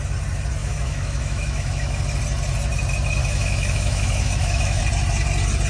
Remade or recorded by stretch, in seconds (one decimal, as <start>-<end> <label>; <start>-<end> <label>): 0.0-0.6 recorded; 0.6-2.0 remade; 2.0-3.2 recorded; 3.2-4.8 remade; 4.8-5.7 recorded